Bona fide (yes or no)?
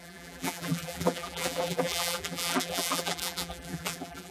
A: no